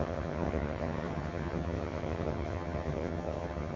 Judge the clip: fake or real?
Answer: fake